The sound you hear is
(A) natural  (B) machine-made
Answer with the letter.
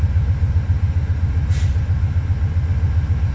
A